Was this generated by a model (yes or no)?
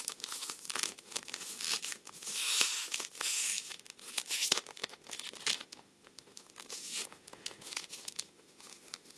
yes